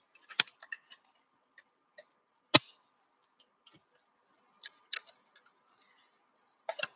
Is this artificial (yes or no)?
no